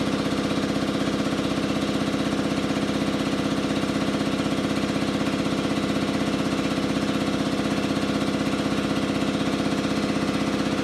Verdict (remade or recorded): recorded